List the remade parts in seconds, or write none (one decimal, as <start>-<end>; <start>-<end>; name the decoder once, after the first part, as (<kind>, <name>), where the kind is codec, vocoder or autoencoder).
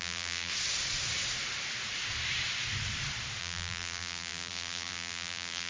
0.0-0.5 (vocoder, BigVGAN v2); 3.4-5.7